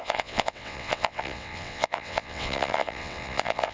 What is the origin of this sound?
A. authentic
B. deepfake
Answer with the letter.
B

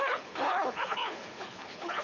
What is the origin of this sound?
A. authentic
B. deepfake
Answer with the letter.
B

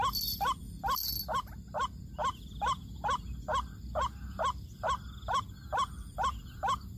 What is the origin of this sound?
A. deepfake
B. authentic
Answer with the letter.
B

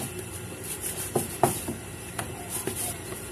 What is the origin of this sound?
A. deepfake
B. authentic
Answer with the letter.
A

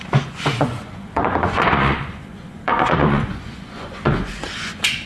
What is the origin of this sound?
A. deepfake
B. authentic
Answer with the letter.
A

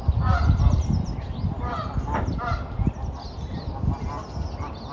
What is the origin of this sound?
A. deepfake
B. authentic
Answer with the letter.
B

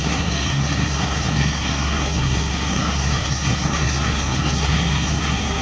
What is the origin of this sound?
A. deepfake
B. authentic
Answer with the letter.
A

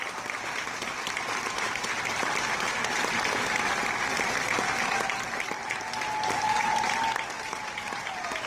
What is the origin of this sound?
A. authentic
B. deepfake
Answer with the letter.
A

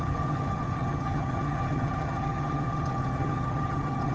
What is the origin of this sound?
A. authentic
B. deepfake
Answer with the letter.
B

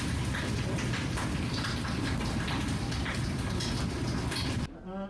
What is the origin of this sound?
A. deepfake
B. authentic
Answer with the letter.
B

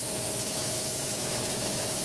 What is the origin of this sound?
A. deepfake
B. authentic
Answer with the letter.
A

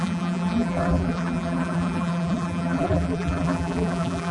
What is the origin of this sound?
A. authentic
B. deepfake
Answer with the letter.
B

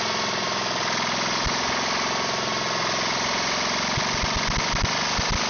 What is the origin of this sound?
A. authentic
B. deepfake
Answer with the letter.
A